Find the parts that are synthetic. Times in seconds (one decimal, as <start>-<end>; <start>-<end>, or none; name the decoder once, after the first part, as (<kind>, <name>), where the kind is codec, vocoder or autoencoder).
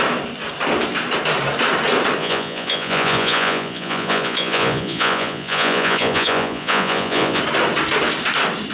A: 2.2-7.4 (vocoder, Vocos)